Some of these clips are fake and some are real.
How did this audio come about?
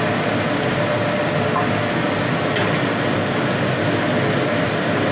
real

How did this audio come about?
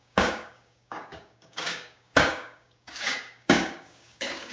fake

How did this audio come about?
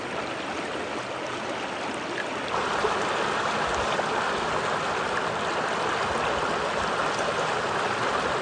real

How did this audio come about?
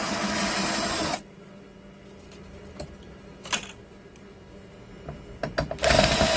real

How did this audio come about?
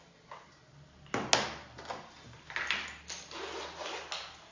real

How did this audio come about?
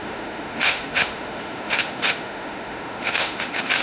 fake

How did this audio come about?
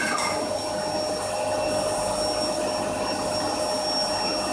real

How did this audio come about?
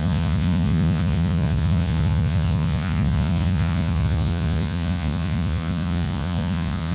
fake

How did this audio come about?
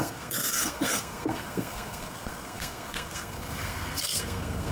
fake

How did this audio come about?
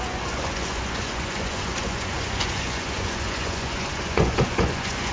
fake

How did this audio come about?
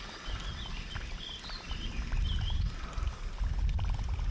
real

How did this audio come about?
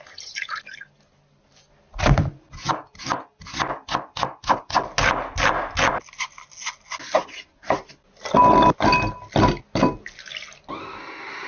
real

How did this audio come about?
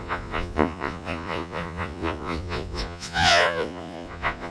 fake